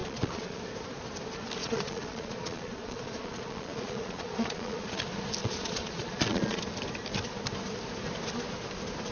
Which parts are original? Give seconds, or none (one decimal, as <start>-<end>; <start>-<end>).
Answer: 0.6-1.6; 5.0-5.4; 6.6-9.1